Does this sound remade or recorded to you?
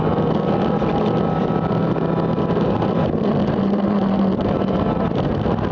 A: recorded